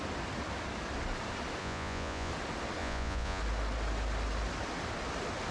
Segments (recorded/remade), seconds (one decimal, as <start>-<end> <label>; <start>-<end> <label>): 0.0-1.6 recorded; 1.6-2.3 remade; 2.3-2.8 recorded; 2.8-3.4 remade; 3.4-5.5 recorded